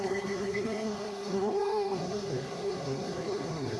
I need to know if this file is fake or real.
fake